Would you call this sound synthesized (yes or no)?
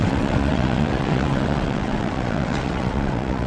yes